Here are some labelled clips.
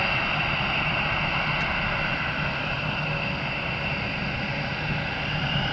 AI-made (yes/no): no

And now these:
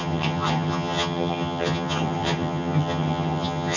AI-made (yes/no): yes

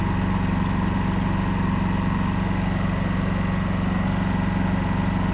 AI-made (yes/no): no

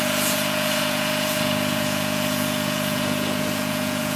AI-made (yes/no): yes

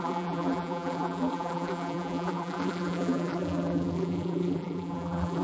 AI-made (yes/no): yes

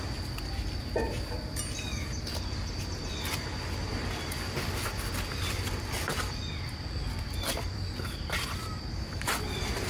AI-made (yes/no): no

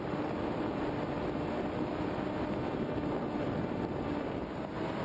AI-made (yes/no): no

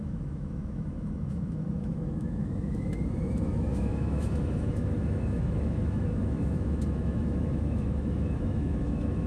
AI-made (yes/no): yes